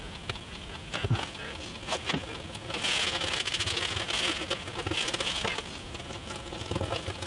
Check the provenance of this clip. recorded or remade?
recorded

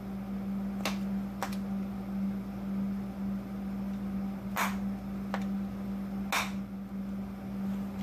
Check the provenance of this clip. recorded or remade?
recorded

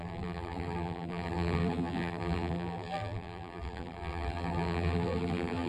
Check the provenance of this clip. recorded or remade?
remade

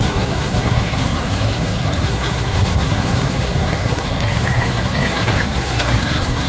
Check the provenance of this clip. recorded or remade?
remade